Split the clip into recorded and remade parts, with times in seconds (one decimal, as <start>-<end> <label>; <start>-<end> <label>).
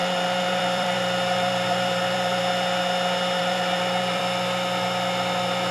0.0-2.4 remade; 2.4-3.4 recorded; 3.4-4.2 remade; 4.2-5.7 recorded